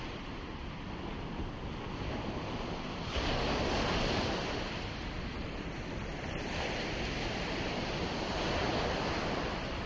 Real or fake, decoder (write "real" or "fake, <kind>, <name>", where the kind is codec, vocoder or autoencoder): real